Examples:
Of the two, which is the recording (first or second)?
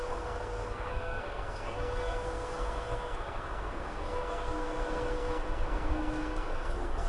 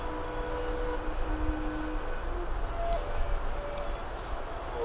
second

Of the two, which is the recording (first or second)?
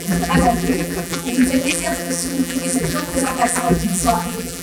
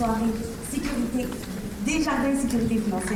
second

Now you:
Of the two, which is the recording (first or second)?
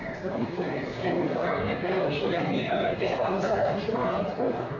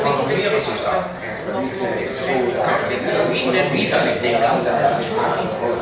second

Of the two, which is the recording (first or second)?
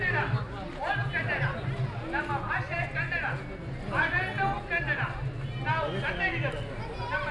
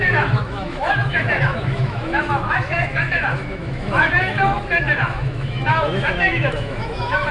first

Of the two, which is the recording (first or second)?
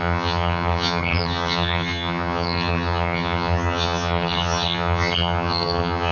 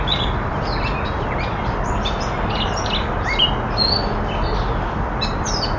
second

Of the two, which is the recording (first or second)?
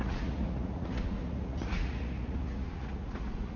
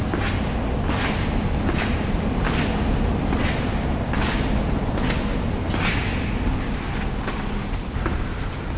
second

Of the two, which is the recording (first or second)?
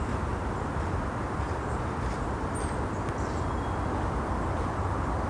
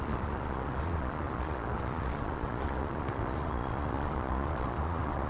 first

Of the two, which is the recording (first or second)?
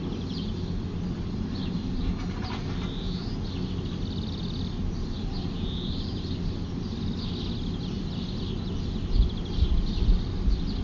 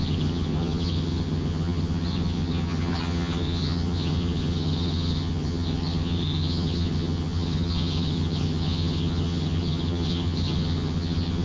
first